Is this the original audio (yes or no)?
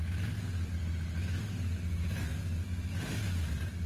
yes